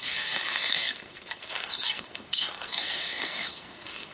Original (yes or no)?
no